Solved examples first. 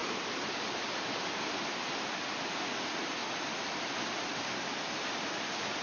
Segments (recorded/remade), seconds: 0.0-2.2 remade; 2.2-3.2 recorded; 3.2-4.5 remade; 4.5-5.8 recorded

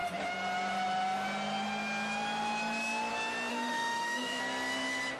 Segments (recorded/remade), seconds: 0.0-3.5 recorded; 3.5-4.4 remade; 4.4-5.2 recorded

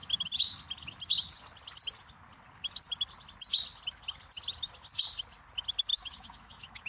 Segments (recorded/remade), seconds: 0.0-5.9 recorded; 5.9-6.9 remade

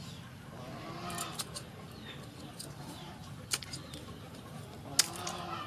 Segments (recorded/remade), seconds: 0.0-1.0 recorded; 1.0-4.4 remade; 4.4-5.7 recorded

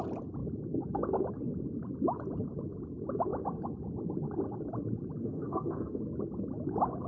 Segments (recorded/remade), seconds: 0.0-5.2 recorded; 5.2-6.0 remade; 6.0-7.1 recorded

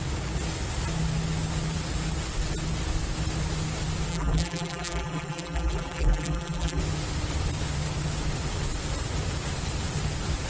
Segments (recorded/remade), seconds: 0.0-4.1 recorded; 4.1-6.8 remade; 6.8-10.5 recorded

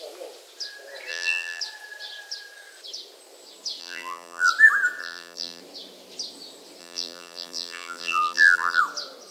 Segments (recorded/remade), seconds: 0.0-1.1 recorded; 1.1-1.6 remade; 1.6-3.8 recorded; 3.8-4.5 remade; 4.5-5.0 recorded; 5.0-5.6 remade; 5.6-6.8 recorded; 6.8-8.8 remade; 8.8-9.3 recorded

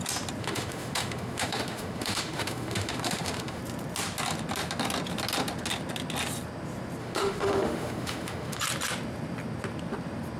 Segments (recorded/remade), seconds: 0.0-0.4 recorded; 0.4-3.6 remade; 3.6-7.0 recorded; 7.0-8.6 remade; 8.6-10.4 recorded